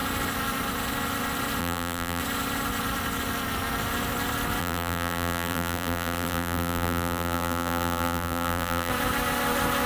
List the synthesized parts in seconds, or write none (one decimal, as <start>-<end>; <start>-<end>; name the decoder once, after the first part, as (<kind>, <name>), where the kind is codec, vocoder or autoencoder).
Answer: 1.6-2.2 (vocoder, BigVGAN v2); 4.6-8.9